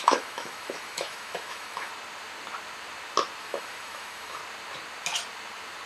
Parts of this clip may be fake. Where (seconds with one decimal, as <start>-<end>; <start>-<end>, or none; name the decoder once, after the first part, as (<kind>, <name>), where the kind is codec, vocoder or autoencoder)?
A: 0.0-1.9 (autoencoder, DAC-VAE); 3.4-4.4